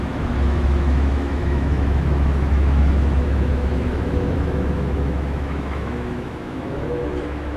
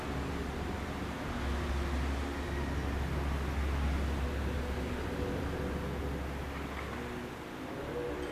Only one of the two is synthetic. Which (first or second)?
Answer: first